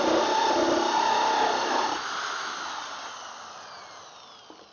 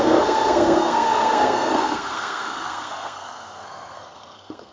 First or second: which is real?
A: first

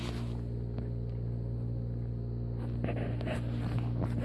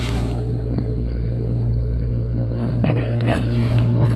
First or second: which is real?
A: first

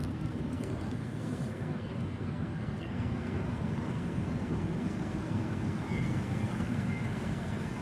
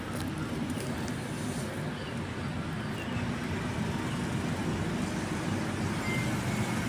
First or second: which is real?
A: second